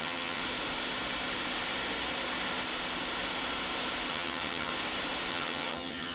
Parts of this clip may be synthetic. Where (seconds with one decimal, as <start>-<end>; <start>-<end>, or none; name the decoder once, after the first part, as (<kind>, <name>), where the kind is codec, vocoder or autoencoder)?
0.0-0.4 (vocoder, HiFi-GAN); 4.1-4.7; 5.3-6.1